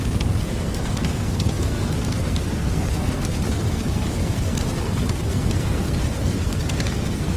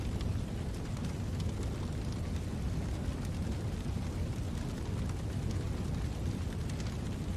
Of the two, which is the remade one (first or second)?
first